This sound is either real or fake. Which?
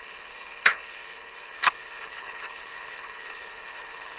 fake